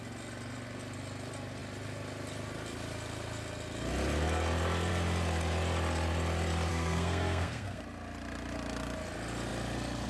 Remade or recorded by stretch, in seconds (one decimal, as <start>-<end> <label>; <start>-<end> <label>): 0.0-6.7 recorded; 6.7-7.8 remade; 7.8-10.1 recorded